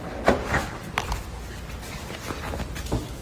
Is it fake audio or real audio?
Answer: real